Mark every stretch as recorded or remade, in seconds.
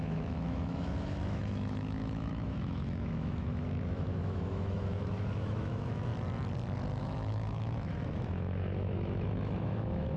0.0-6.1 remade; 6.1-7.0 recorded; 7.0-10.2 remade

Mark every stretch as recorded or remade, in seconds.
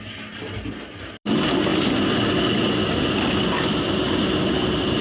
0.0-5.0 recorded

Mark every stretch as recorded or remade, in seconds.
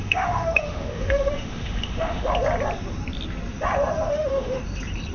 0.0-2.3 remade; 2.3-4.1 recorded; 4.1-4.6 remade; 4.6-5.1 recorded